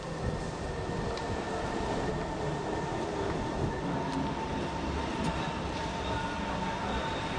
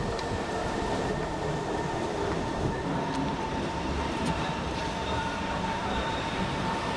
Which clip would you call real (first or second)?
first